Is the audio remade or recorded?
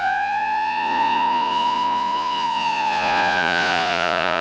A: remade